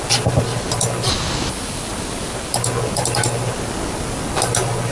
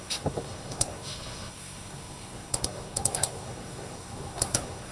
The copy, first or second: second